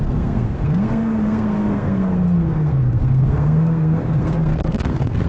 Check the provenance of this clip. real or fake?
fake